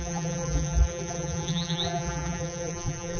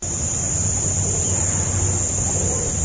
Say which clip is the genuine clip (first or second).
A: second